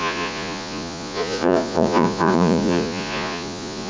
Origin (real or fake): fake